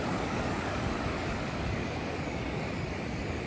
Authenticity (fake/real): fake